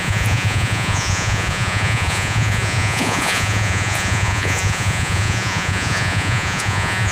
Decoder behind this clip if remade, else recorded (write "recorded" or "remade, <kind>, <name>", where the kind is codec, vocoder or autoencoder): remade, vocoder, Vocos